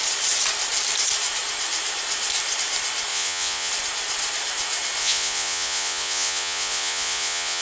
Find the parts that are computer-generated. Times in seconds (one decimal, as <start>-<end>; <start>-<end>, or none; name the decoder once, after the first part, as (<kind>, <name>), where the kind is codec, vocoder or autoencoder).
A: 3.1-3.7 (vocoder, Vocos); 5.0-7.6